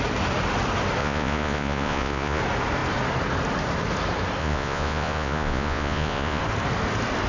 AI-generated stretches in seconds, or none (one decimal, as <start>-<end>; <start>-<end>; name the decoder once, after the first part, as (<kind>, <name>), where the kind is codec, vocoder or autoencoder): 1.0-2.4 (vocoder, Vocos); 4.4-6.4